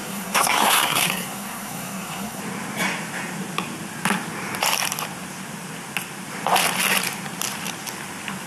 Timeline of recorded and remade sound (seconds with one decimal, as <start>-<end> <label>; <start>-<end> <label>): 0.0-2.4 remade; 2.4-8.5 recorded